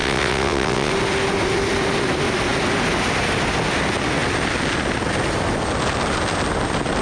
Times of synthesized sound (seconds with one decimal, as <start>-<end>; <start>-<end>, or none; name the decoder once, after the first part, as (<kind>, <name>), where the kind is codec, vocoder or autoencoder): 0.0-0.9 (vocoder, WaveNeXt)